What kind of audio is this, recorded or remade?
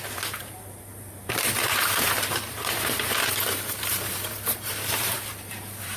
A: remade